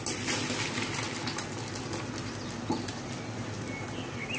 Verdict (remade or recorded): recorded